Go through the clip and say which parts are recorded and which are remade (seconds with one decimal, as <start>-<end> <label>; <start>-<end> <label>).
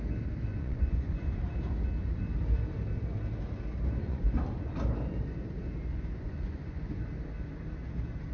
0.0-0.5 recorded; 0.5-1.4 remade; 1.4-4.0 recorded; 4.0-4.7 remade; 4.7-5.9 recorded; 5.9-7.0 remade; 7.0-8.3 recorded